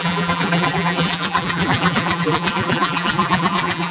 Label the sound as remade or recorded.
remade